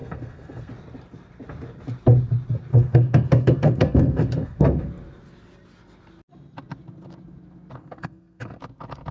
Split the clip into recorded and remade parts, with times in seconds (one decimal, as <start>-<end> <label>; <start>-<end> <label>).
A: 0.0-0.7 remade; 0.7-2.7 recorded; 2.7-4.9 remade; 4.9-7.8 recorded; 7.8-8.6 remade; 8.6-9.1 recorded